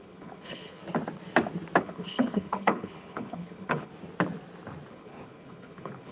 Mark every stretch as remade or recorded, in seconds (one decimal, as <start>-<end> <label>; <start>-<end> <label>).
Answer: 0.0-0.8 remade; 0.8-1.8 recorded; 1.8-3.9 remade; 3.9-4.9 recorded; 4.9-6.1 remade